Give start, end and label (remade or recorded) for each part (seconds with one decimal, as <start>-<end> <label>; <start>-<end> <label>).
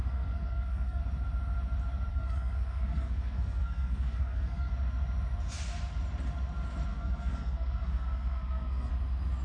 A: 0.0-1.0 remade; 1.0-2.1 recorded; 2.1-4.7 remade; 4.7-6.9 recorded; 6.9-8.9 remade; 8.9-9.4 recorded